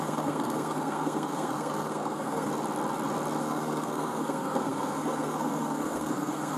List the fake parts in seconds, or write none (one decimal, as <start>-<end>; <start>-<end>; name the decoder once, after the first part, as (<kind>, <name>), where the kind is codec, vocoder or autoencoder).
0.0-2.5 (codec, SNAC); 3.4-6.6